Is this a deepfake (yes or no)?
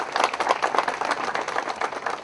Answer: no